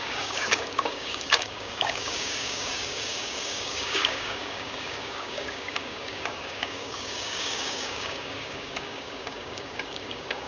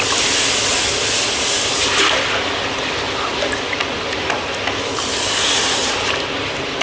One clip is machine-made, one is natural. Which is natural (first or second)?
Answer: second